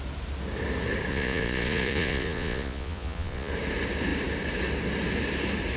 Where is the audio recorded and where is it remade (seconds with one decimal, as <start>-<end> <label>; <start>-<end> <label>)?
0.0-1.1 recorded; 1.1-3.5 remade; 3.5-5.8 recorded